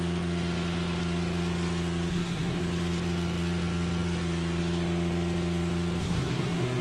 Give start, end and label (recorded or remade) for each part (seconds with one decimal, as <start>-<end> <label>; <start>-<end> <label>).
0.0-2.1 recorded; 2.1-2.6 remade; 2.6-6.0 recorded; 6.0-6.8 remade